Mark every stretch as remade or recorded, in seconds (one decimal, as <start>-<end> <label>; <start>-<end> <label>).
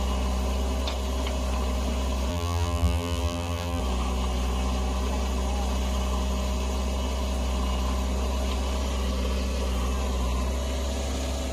0.0-2.3 recorded; 2.3-3.8 remade; 3.8-11.5 recorded